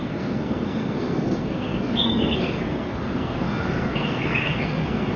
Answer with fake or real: fake